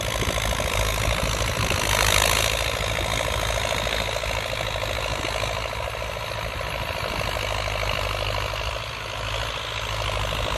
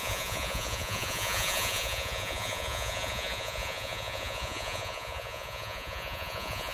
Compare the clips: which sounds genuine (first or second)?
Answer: first